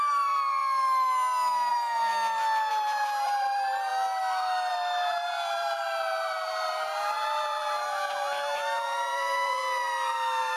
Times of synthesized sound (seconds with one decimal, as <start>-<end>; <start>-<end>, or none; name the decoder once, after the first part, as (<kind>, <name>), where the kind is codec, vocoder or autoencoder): 0.0-0.6 (vocoder, BigVGAN v2); 1.7-2.1; 2.7-3.9; 4.7-10.6